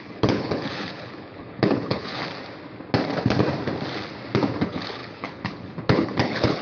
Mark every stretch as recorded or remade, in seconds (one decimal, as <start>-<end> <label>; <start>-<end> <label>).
0.0-2.2 remade; 2.2-4.6 recorded; 4.6-6.6 remade